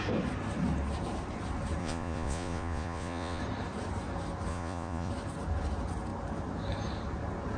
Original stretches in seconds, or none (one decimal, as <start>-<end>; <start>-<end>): 0.0-1.8; 3.4-4.5; 5.1-7.6